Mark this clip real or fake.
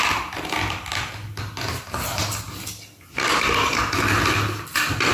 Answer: real